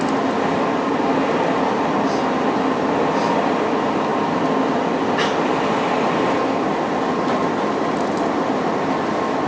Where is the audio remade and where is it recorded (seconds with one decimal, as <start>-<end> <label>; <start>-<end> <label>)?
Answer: 0.0-9.5 recorded